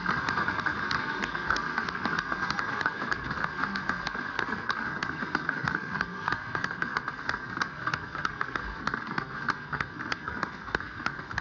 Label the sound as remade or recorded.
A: remade